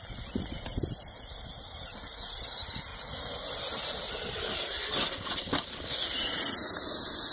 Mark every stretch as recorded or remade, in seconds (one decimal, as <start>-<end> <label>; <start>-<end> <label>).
0.0-7.3 recorded